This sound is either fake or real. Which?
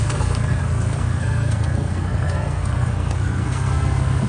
fake